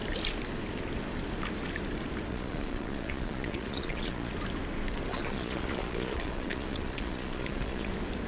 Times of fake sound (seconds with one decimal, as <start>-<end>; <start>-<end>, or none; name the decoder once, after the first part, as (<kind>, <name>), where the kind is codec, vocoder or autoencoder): 2.3-4.3 (vocoder, Vocos); 5.1-7.9